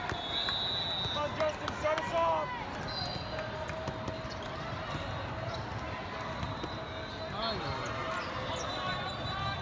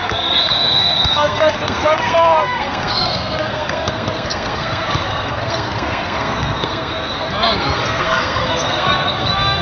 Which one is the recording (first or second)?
first